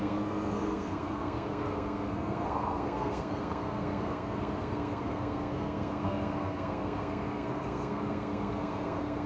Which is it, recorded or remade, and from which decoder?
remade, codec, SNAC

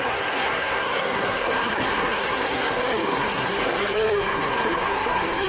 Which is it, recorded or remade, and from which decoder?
remade, codec, SNAC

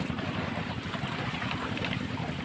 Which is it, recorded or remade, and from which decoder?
recorded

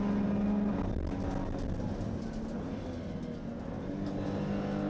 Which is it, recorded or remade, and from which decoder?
recorded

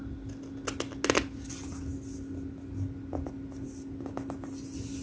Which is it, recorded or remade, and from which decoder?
recorded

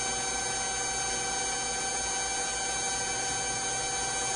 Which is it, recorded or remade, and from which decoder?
recorded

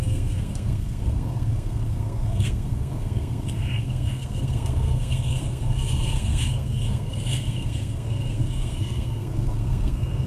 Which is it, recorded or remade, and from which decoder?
remade, codec, SNAC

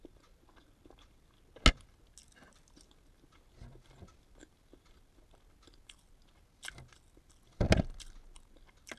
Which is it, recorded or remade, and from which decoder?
recorded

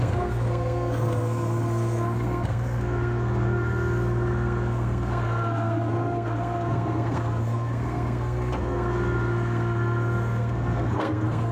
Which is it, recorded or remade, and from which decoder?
remade, codec, SNAC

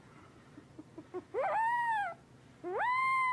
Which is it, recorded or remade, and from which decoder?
recorded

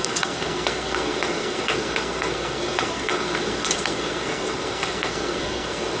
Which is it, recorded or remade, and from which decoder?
remade, codec, SNAC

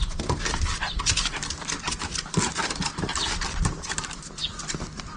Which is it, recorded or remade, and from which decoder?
recorded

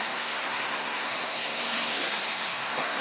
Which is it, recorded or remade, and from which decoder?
remade, codec, SNAC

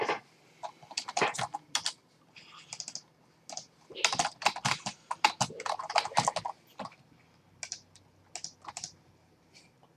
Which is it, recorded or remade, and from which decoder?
recorded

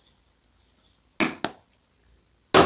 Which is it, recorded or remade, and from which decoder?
recorded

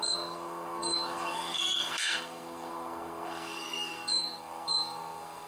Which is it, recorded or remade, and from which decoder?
remade, codec, SNAC